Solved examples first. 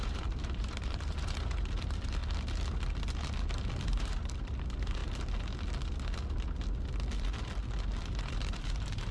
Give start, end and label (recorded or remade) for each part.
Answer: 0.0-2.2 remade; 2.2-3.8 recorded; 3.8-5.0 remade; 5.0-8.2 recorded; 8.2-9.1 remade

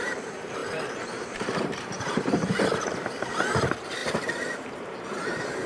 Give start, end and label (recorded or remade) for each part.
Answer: 0.0-5.7 remade

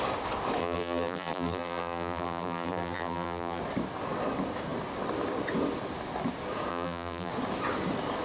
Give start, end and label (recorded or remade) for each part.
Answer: 0.0-0.6 recorded; 0.6-3.6 remade; 3.6-6.7 recorded; 6.7-7.3 remade; 7.3-8.2 recorded